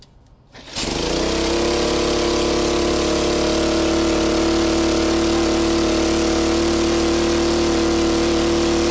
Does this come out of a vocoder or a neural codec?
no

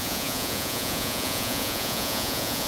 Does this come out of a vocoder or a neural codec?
yes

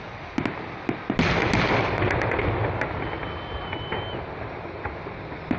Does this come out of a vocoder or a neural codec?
no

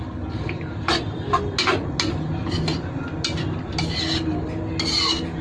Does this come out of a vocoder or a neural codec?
no